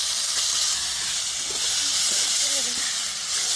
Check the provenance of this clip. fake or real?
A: real